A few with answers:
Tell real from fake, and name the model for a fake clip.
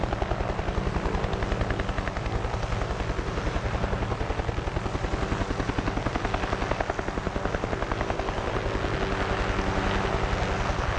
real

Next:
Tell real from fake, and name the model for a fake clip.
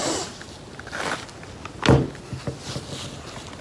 real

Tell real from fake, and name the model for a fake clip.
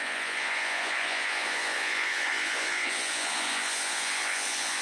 fake, vocoder, Vocos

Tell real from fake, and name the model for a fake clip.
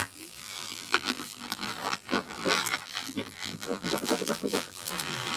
fake, vocoder, BigVGAN v2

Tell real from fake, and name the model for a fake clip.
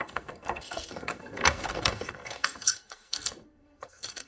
fake, codec, SNAC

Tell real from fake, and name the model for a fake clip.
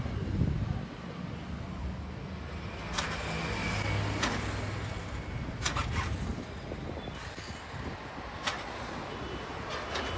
real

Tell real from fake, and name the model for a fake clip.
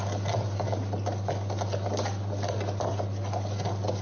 real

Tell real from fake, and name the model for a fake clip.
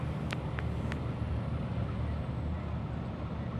real